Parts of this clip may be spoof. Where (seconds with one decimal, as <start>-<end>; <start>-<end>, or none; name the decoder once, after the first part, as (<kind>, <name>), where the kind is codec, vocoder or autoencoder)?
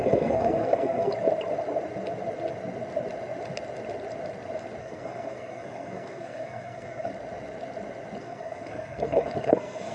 0.0-1.1 (codec, SNAC); 4.8-7.1; 8.2-9.9